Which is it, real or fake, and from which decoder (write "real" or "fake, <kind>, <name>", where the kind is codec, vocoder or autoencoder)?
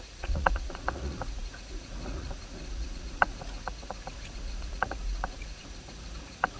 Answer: fake, vocoder, Vocos